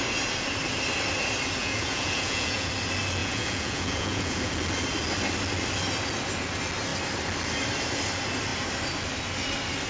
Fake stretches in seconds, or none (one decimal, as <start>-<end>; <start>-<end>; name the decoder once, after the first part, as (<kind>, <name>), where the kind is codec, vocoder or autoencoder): 1.6-2.7 (vocoder, Vocos); 3.2-4.5